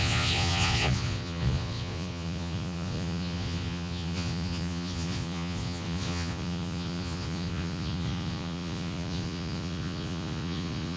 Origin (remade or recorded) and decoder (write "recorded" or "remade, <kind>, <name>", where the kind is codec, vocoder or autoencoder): remade, vocoder, Vocos